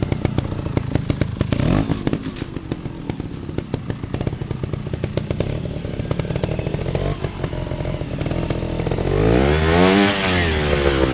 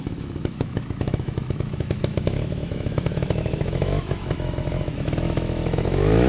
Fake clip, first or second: second